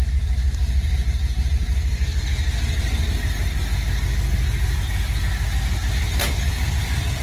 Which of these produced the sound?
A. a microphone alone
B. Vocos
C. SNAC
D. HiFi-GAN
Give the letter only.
A